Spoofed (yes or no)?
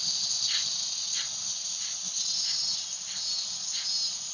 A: no